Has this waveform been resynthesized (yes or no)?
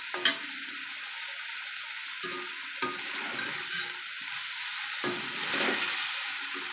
no